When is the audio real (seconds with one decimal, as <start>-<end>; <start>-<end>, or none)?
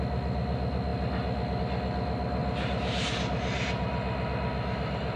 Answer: 0.0-5.2